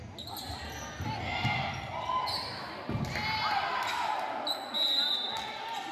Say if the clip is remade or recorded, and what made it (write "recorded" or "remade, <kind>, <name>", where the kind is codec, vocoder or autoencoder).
recorded